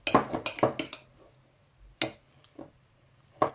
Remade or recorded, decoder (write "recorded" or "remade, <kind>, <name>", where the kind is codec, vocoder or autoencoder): recorded